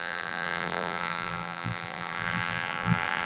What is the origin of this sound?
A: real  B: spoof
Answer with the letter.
B